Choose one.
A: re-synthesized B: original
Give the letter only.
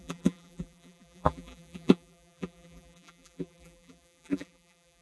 A